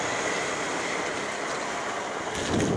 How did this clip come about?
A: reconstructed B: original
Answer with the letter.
B